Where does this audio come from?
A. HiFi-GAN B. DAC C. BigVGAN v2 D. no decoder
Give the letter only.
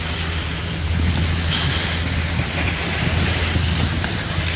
D